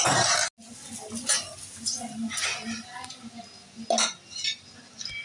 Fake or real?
real